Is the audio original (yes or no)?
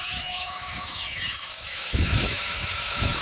no